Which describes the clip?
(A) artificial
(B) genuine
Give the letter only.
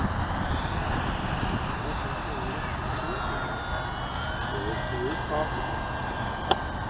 B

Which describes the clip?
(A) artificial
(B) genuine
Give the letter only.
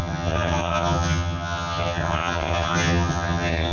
A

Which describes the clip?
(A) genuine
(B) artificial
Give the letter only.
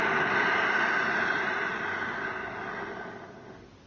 A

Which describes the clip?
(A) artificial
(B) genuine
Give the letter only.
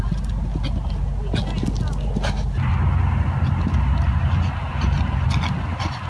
B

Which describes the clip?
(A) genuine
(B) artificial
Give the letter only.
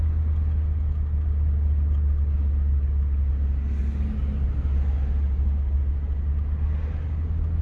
A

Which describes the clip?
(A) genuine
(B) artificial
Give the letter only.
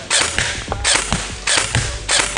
A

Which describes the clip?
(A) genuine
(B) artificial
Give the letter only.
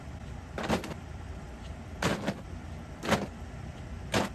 A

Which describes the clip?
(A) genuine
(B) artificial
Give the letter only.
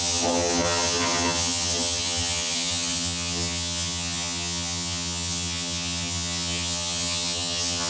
B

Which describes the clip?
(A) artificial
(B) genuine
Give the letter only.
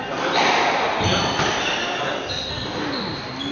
B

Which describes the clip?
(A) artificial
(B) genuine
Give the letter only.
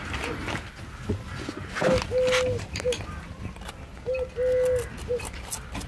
B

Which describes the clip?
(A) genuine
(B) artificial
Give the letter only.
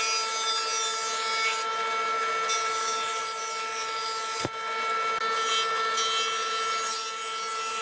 A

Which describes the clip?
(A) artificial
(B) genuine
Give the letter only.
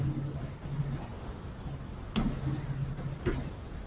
B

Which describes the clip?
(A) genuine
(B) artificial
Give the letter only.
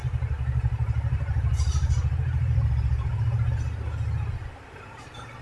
A